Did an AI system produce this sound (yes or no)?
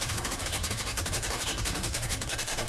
yes